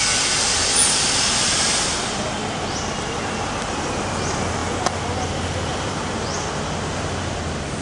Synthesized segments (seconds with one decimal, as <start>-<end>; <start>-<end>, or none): none

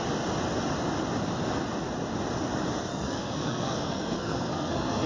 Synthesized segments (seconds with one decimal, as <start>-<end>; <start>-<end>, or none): 2.9-5.1

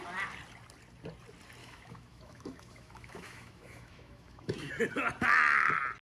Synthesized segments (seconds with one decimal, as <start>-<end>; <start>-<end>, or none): 1.6-4.7